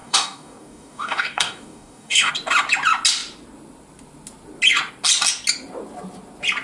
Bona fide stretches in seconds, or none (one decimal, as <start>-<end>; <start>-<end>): 2.3-6.6